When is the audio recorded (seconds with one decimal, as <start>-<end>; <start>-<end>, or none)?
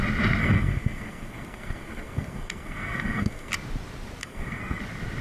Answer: 0.0-0.4; 3.5-4.2; 4.8-5.2